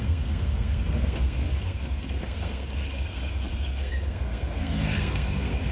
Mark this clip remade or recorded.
remade